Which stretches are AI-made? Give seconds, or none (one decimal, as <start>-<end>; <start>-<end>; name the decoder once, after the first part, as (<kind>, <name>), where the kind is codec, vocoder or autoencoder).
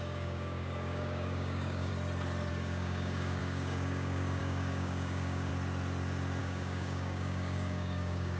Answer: 0.0-1.9 (codec, DAC); 2.5-5.5; 6.4-8.4